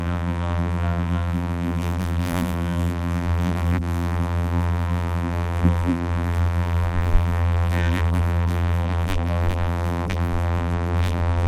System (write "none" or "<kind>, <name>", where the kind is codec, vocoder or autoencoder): vocoder, BigVGAN v2